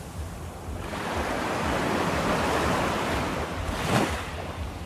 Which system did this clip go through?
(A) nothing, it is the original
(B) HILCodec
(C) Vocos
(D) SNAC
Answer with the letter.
A